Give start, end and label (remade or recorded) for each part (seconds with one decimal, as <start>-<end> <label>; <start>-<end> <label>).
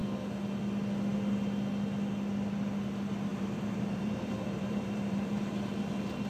0.0-3.3 recorded; 3.3-5.6 remade; 5.6-6.3 recorded